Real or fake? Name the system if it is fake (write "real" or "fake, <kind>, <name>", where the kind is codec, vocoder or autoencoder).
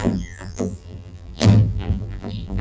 fake, vocoder, BigVGAN v2